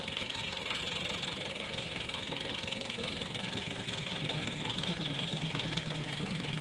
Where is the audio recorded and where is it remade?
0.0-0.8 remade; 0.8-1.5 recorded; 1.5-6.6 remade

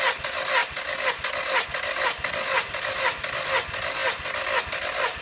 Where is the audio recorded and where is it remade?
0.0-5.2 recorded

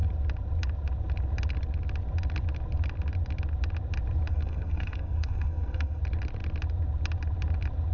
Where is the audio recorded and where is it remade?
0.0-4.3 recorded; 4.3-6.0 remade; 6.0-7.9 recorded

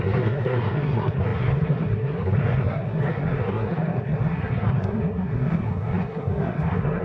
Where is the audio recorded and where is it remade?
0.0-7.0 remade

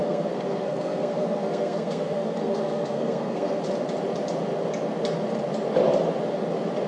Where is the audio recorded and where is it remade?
0.0-3.6 remade; 3.6-6.9 recorded

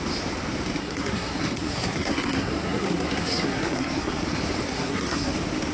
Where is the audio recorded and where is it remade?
0.0-0.8 recorded; 0.8-4.2 remade; 4.2-4.7 recorded; 4.7-5.3 remade; 5.3-5.7 recorded

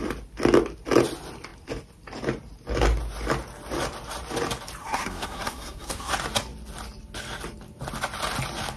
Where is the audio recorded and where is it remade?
0.0-4.8 recorded; 4.8-6.1 remade; 6.1-8.8 recorded

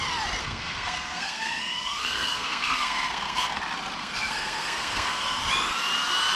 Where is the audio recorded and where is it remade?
0.0-0.4 recorded; 0.4-3.6 remade; 3.6-4.0 recorded; 4.0-5.4 remade; 5.4-6.4 recorded